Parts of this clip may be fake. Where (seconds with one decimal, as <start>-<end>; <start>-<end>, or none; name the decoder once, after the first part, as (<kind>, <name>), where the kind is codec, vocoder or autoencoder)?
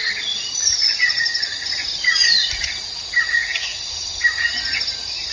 1.3-1.8 (vocoder, Vocos); 3.4-3.9